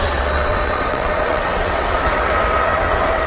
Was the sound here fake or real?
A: fake